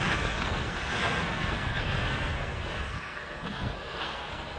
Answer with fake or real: fake